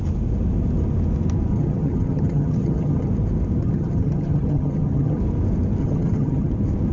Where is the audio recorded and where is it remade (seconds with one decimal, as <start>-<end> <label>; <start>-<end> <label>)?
0.0-1.5 recorded; 1.5-3.1 remade; 3.1-3.6 recorded; 3.6-5.2 remade; 5.2-5.8 recorded; 5.8-6.5 remade; 6.5-6.9 recorded

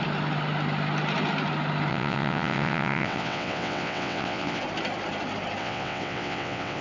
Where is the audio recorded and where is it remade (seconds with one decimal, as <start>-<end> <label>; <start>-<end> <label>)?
0.0-1.9 recorded; 1.9-4.6 remade; 4.6-5.6 recorded; 5.6-6.8 remade